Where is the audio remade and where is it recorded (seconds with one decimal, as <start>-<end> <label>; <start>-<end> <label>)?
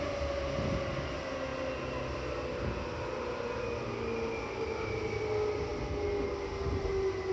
0.0-7.3 recorded